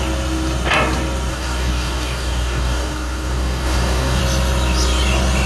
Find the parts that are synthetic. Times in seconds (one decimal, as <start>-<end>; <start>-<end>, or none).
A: 1.3-4.2